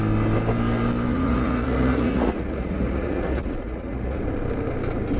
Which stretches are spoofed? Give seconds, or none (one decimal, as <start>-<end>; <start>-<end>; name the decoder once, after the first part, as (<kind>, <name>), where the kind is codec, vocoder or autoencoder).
1.1-4.2 (vocoder, Vocos)